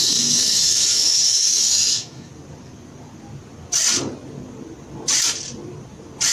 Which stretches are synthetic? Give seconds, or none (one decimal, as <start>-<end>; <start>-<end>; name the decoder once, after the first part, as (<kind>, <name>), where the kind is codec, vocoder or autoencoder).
0.0-2.3 (autoencoder, DAC-VAE)